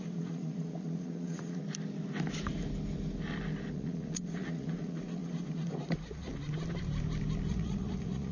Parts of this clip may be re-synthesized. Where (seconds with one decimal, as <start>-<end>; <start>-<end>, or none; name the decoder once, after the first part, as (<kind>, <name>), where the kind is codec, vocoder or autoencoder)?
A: 0.0-1.6 (vocoder, Vocos); 3.7-6.3; 7.5-8.3